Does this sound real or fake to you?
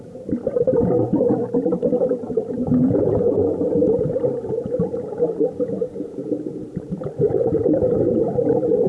fake